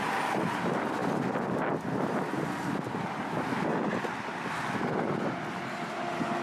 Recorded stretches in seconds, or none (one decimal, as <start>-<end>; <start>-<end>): 0.0-6.4